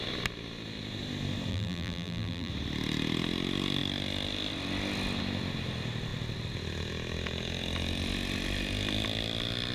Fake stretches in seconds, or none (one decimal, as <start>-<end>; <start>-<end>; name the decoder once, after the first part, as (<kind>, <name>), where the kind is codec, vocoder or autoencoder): 1.5-2.5 (vocoder, BigVGAN v2)